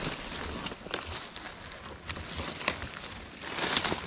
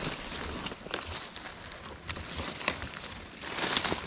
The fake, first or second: second